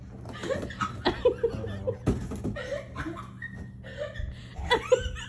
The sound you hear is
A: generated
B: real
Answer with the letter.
B